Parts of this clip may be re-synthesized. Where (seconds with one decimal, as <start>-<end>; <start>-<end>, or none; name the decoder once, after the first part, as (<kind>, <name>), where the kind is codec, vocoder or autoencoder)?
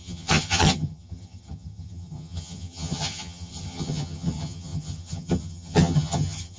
0.0-6.6 (vocoder, HiFi-GAN)